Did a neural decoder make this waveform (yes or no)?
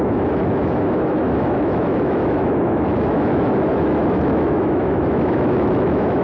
yes